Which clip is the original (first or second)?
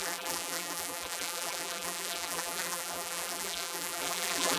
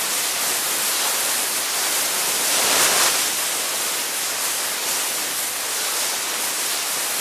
second